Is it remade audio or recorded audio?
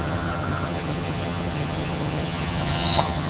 remade